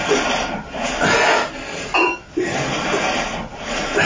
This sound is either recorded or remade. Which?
recorded